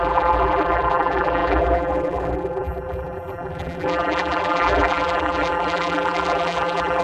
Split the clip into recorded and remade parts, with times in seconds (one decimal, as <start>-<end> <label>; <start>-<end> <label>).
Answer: 0.0-7.0 remade

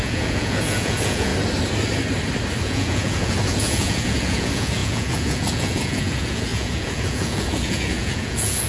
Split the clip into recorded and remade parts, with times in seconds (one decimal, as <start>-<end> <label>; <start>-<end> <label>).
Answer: 0.0-1.3 remade; 1.3-2.6 recorded; 2.6-8.7 remade

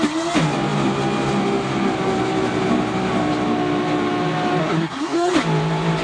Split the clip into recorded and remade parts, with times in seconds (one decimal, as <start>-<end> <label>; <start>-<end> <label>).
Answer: 0.0-4.6 recorded; 4.6-5.3 remade; 5.3-6.0 recorded

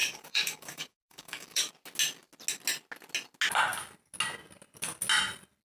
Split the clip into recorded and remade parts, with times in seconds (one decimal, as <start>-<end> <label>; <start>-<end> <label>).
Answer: 0.0-1.7 remade; 1.7-5.7 recorded

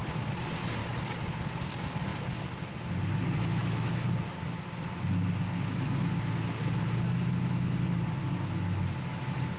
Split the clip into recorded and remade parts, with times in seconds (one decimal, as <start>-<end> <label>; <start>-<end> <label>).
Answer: 0.0-9.6 recorded

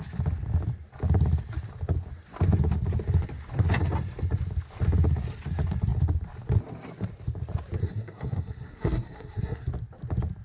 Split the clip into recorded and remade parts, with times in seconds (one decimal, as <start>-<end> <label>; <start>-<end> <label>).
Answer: 0.0-7.8 recorded; 7.8-9.7 remade; 9.7-10.4 recorded

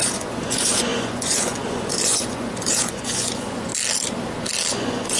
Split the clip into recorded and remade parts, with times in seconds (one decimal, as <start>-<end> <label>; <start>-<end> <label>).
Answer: 0.0-3.7 remade; 3.7-4.7 recorded; 4.7-5.2 remade

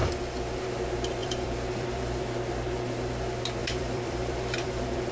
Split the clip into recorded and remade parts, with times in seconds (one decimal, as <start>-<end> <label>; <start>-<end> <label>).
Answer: 0.0-0.6 remade; 0.6-1.2 recorded; 1.2-2.2 remade; 2.2-3.6 recorded; 3.6-5.1 remade